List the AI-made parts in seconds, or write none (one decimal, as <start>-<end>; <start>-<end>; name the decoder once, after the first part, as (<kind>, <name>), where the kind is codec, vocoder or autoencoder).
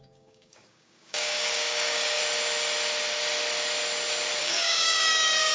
0.0-2.2 (codec, DAC); 4.4-5.5